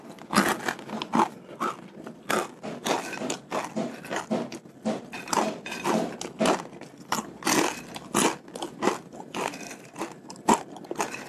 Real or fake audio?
real